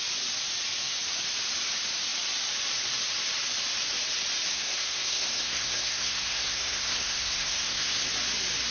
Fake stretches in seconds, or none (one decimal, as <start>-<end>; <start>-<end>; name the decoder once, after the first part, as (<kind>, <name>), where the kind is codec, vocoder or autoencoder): 4.5-8.1 (codec, SNAC)